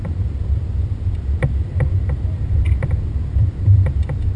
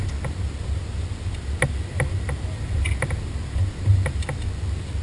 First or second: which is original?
second